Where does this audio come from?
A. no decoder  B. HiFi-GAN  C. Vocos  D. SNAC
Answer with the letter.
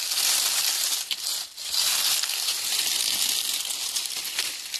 A